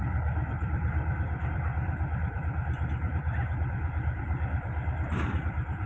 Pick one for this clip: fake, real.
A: fake